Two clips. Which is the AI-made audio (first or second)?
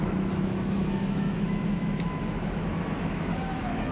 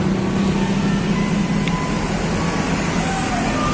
first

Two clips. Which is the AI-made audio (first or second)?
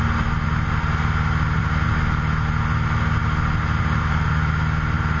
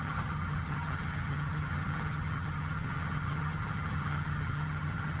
second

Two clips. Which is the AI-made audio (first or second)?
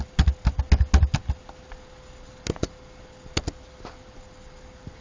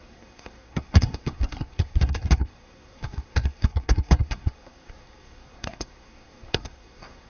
second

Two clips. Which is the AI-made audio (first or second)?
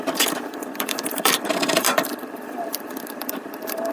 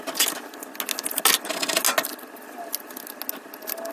first